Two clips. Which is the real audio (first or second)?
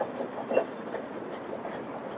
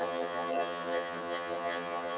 first